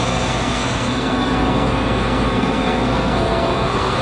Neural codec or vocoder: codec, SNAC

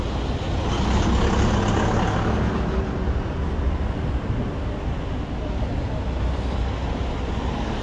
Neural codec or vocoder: none